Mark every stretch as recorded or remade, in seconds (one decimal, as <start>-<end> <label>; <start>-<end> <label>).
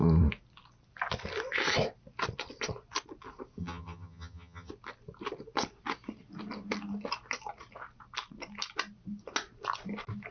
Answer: 0.0-3.6 recorded; 3.6-4.7 remade; 4.7-10.3 recorded